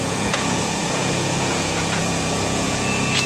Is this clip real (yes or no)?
no